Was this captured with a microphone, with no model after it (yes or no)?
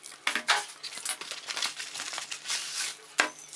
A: yes